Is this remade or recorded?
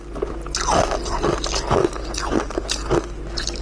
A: recorded